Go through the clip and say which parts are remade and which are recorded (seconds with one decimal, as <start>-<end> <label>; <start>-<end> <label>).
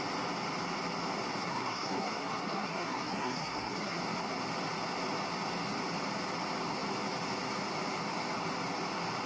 0.0-1.4 recorded; 1.4-4.0 remade; 4.0-9.3 recorded